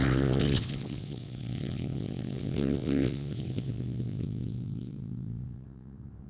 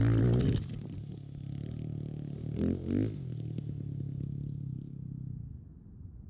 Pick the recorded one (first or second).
second